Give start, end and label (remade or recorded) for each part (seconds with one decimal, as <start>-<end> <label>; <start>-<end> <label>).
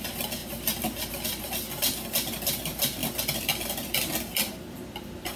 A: 0.0-5.4 recorded